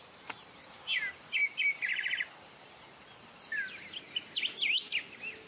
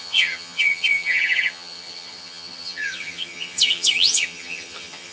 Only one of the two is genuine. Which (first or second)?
first